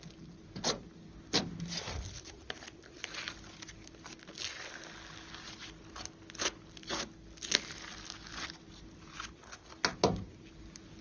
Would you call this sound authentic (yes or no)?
yes